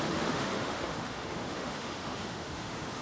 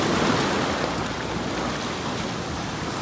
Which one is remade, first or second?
first